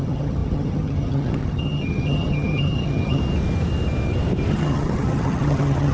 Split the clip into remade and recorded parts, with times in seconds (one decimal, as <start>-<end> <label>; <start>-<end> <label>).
0.0-3.2 remade; 3.2-4.5 recorded; 4.5-5.9 remade